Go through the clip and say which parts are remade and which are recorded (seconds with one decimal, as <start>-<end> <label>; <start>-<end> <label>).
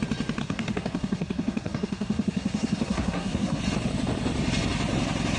0.0-0.4 recorded; 0.4-3.6 remade; 3.6-5.4 recorded